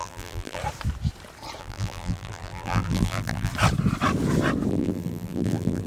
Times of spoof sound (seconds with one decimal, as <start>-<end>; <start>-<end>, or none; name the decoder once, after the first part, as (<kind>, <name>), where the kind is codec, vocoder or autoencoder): 0.0-0.6 (vocoder, BigVGAN v2); 1.6-3.5; 4.7-5.9